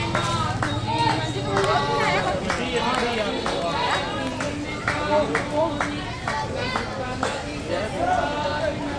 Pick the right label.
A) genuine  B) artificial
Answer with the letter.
A